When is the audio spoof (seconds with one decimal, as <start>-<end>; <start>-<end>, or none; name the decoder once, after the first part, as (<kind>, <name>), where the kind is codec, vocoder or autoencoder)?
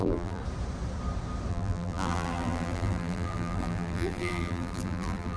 0.0-0.4 (vocoder, BigVGAN v2); 1.5-5.4